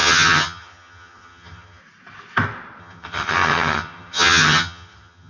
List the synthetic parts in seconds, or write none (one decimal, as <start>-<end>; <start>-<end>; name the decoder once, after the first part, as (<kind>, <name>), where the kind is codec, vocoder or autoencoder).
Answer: 0.0-1.8 (vocoder, HiFi-GAN); 2.8-5.3